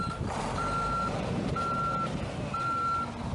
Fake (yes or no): yes